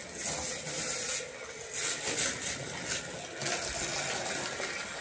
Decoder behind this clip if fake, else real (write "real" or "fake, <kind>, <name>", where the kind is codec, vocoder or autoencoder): real